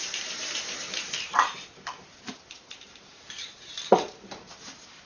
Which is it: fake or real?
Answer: fake